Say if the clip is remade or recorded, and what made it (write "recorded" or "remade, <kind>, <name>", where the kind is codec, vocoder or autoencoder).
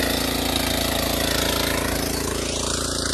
recorded